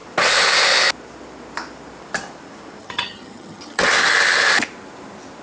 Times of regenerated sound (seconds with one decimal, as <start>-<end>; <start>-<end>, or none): 2.8-3.8